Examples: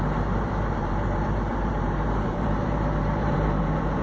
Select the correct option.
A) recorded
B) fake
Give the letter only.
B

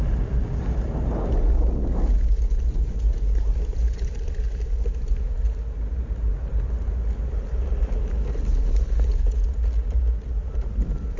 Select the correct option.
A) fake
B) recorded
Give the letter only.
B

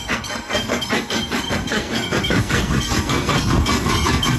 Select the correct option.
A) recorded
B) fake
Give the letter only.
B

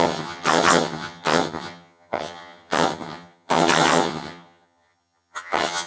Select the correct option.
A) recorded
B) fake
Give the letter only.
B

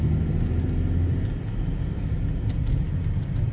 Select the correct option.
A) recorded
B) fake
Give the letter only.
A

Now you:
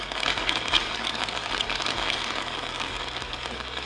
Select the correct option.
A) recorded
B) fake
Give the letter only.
B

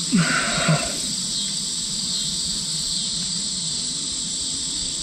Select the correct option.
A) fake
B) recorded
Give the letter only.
B